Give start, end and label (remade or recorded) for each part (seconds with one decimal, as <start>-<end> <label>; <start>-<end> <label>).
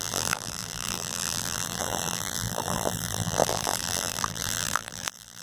0.0-5.4 remade